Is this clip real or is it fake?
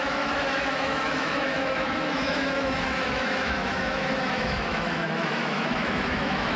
fake